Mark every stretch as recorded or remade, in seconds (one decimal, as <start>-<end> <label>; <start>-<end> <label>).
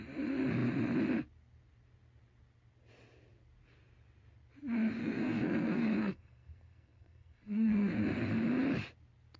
0.0-5.0 recorded; 5.0-8.1 remade; 8.1-9.4 recorded